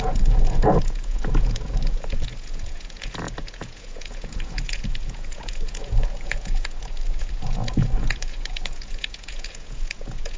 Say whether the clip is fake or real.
fake